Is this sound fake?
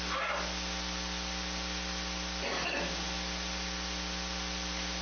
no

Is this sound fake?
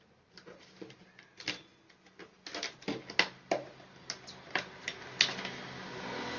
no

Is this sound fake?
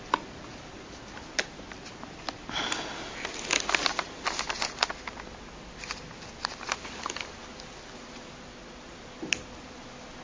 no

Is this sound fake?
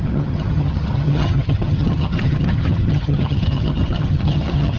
yes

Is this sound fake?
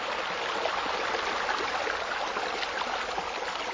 no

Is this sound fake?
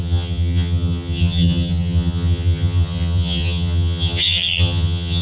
yes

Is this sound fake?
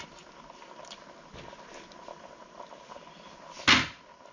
no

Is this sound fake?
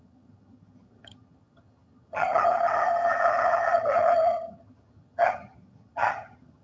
yes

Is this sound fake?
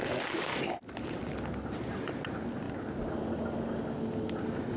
no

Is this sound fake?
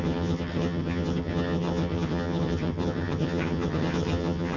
yes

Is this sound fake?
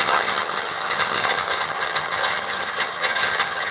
yes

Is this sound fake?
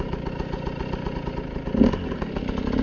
no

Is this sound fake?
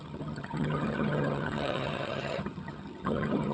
yes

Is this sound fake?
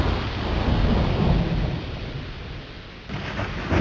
no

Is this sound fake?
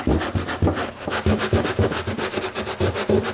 no